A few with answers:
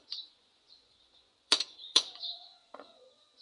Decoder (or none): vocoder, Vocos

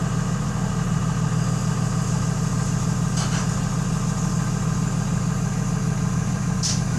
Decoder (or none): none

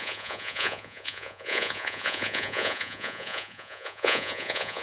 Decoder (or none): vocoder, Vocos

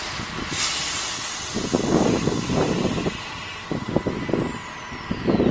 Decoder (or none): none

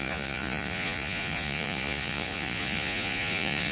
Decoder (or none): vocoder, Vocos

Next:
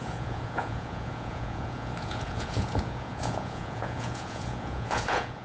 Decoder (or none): vocoder, Vocos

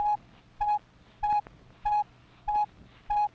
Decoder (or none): none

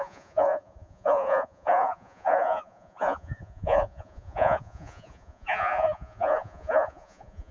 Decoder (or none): vocoder, Vocos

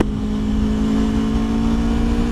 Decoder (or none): none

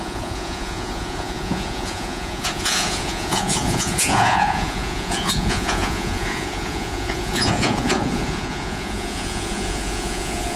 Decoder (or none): vocoder, Vocos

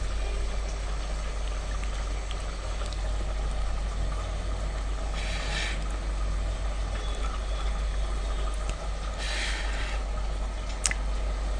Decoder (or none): none